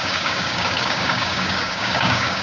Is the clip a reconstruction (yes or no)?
yes